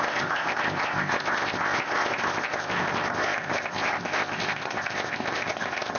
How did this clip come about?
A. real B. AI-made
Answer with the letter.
B